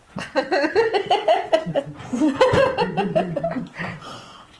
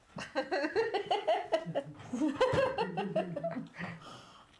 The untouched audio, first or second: second